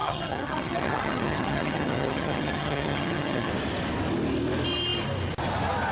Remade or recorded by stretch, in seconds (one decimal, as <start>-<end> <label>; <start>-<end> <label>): 0.0-3.5 remade; 3.5-5.9 recorded